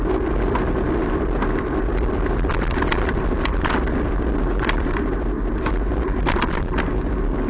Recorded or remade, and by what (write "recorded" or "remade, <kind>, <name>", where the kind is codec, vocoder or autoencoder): remade, vocoder, BigVGAN v2